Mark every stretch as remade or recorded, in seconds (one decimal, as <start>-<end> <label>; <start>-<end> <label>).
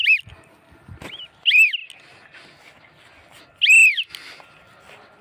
0.0-5.2 recorded